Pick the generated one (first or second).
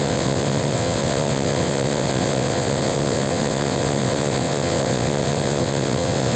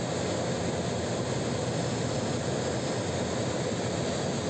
first